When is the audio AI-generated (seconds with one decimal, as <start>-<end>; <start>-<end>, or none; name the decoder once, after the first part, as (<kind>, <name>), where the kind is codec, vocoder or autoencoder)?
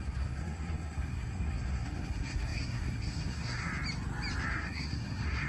0.0-3.7 (codec, SNAC); 4.5-5.5